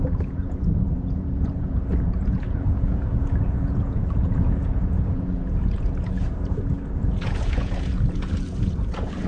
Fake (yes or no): yes